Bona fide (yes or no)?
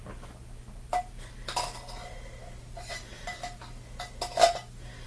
yes